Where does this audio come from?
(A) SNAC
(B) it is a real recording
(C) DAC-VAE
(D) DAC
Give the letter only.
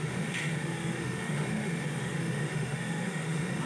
C